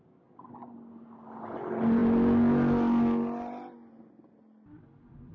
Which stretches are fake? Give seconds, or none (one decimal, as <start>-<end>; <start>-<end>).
none